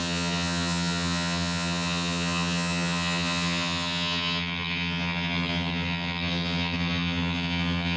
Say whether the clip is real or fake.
fake